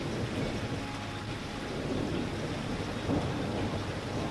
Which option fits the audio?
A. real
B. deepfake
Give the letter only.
A